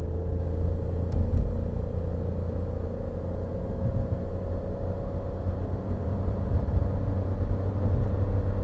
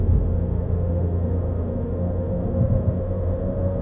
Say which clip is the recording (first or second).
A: first